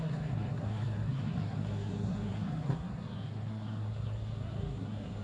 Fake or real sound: fake